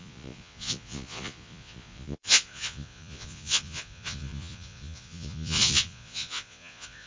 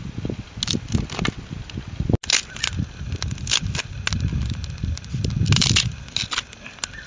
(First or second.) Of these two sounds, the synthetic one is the first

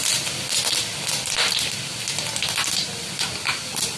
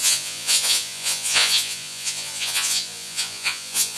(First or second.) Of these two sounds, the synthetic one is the second